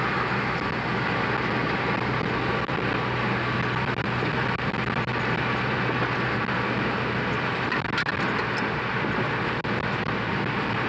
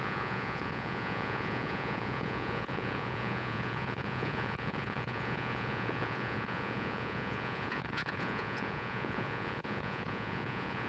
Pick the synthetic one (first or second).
second